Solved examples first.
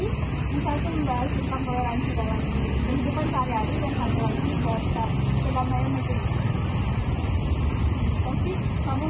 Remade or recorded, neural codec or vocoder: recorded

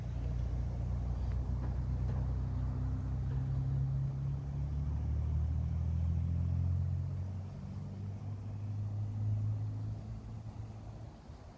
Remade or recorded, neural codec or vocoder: recorded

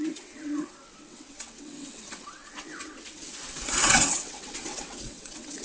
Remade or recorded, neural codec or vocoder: remade, vocoder, WaveNeXt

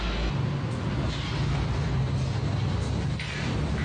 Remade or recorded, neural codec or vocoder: recorded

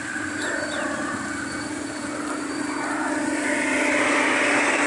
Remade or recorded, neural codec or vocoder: recorded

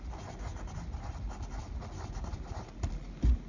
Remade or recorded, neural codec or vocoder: recorded